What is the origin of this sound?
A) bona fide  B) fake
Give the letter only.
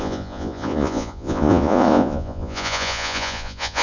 B